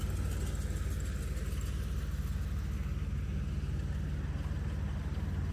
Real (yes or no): yes